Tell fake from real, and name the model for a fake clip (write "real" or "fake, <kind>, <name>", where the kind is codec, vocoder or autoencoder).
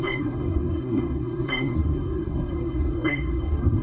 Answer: fake, codec, SNAC